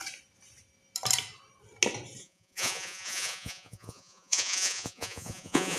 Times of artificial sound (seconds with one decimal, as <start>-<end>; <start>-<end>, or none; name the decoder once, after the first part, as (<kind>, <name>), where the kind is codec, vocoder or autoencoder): 2.2-5.8 (vocoder, Vocos)